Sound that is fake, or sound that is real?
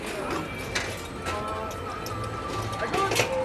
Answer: real